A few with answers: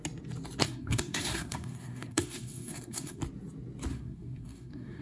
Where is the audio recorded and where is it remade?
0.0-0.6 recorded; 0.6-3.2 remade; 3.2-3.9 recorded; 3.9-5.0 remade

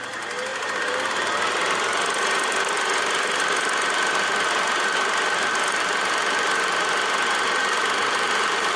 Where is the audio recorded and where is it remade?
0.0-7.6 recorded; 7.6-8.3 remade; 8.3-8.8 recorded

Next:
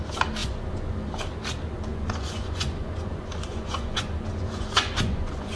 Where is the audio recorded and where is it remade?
0.0-0.4 recorded; 0.4-1.1 remade; 1.1-1.9 recorded; 1.9-5.6 remade

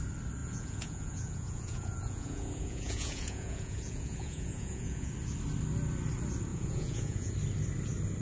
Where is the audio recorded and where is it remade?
0.0-0.4 recorded; 0.4-5.1 remade; 5.1-6.5 recorded; 6.5-7.3 remade; 7.3-8.2 recorded